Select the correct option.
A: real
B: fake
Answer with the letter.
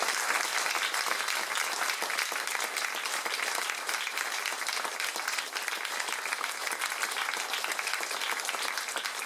A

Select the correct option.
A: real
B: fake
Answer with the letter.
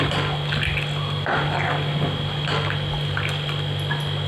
A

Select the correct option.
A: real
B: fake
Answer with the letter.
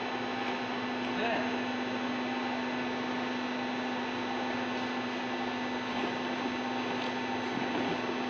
A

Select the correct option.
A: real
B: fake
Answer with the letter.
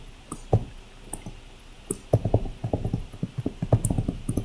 A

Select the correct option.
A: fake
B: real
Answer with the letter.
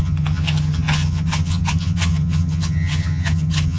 A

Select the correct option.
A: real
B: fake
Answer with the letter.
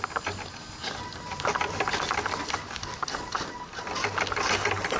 A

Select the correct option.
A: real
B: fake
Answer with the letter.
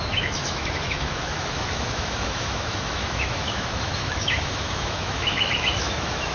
B